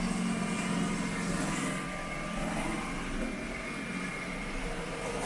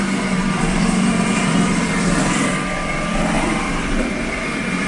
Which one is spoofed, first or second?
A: second